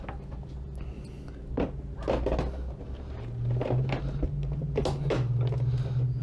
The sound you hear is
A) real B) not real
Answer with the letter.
A